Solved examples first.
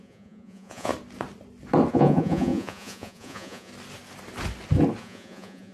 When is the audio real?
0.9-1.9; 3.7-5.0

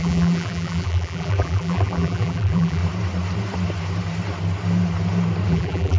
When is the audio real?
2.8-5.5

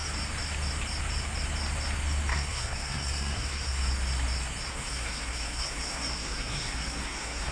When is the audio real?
0.0-2.3; 3.8-4.7

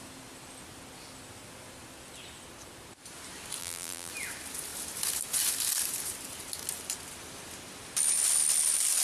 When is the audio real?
0.0-3.6; 4.1-9.0

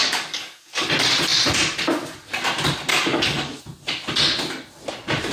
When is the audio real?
0.9-2.9; 3.6-5.3